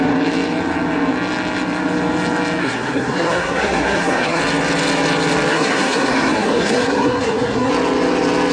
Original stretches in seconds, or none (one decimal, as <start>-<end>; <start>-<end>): 0.0-2.6; 4.4-5.5; 7.7-8.5